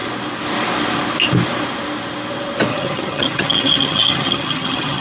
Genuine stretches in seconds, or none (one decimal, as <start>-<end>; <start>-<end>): 0.0-2.7